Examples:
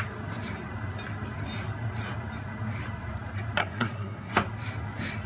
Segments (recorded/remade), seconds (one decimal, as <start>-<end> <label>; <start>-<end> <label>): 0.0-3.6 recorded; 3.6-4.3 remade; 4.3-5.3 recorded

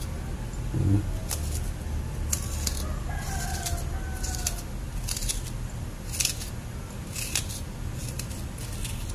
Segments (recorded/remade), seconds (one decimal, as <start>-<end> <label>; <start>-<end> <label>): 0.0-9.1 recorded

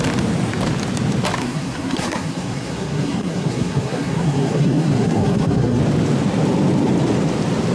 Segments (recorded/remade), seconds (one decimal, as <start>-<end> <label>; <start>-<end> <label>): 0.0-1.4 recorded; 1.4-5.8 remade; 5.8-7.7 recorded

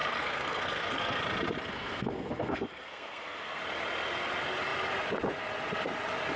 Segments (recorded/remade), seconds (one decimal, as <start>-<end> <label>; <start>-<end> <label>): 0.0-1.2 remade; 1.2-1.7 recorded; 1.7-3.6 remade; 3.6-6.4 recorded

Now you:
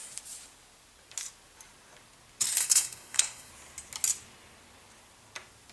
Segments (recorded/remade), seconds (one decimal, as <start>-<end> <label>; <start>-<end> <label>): 0.0-2.6 recorded; 2.6-3.5 remade; 3.5-5.7 recorded

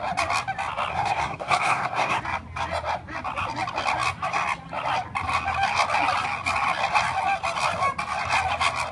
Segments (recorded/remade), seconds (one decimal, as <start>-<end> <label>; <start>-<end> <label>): 0.0-0.9 recorded; 0.9-2.2 remade; 2.2-8.9 recorded

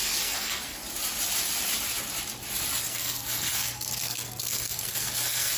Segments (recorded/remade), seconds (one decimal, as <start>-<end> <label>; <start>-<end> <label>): 0.0-0.8 remade; 0.8-2.8 recorded; 2.8-5.6 remade

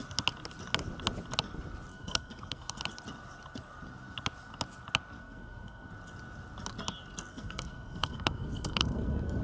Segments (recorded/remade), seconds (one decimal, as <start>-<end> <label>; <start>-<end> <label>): 0.0-1.9 recorded; 1.9-2.8 remade; 2.8-5.2 recorded; 5.2-5.9 remade; 5.9-7.3 recorded; 7.3-9.4 remade